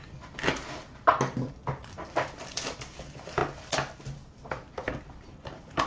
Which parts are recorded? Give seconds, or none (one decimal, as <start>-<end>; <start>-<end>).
0.6-1.5; 3.4-4.5